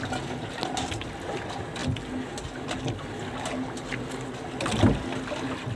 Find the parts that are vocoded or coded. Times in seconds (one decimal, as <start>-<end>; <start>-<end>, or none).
none